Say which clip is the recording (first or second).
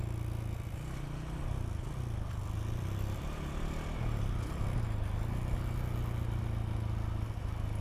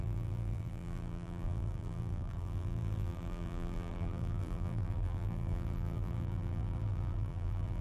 first